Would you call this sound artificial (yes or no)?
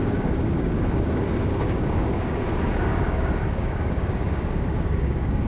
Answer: yes